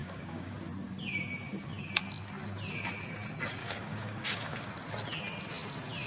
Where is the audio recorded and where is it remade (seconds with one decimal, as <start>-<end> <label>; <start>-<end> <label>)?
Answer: 0.0-0.5 remade; 0.5-3.6 recorded; 3.6-4.7 remade; 4.7-6.1 recorded